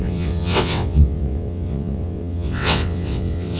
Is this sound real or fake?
fake